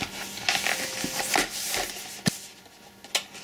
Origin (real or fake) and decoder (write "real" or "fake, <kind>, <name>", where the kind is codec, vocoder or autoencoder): real